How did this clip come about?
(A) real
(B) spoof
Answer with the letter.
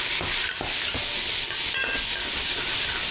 A